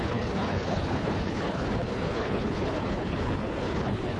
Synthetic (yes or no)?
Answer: yes